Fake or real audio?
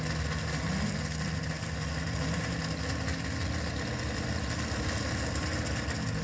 real